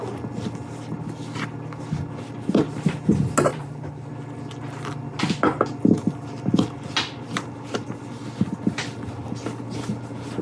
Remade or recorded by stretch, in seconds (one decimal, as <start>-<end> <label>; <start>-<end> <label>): 0.0-3.5 recorded; 3.5-4.1 remade; 4.1-10.4 recorded